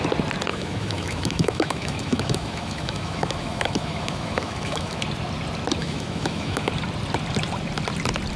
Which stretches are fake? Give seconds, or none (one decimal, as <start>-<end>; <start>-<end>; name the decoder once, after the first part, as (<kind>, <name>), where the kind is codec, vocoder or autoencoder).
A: 0.5-5.0 (autoencoder, DAC-VAE); 5.8-6.7